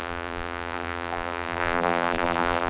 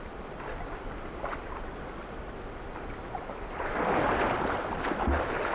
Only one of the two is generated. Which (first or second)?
first